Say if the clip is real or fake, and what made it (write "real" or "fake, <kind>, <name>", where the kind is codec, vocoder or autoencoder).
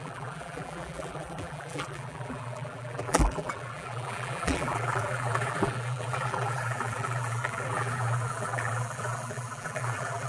fake, vocoder, BigVGAN v2